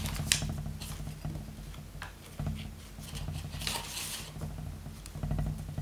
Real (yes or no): yes